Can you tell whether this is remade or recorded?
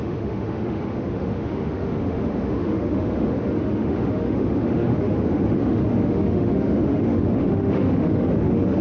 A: remade